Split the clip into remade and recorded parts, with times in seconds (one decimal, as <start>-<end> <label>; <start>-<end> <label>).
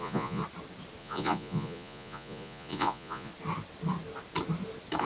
0.0-0.4 remade; 0.4-1.0 recorded; 1.0-3.3 remade; 3.3-5.0 recorded